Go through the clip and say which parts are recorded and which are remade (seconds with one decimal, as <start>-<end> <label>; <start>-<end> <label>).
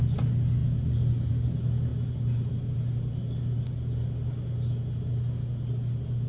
0.0-6.3 recorded